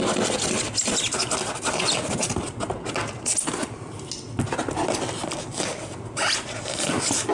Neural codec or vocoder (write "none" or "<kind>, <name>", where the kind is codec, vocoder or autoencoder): none